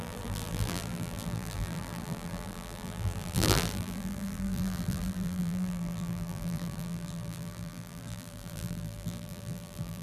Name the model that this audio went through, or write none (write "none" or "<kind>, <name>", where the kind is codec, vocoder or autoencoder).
vocoder, BigVGAN v2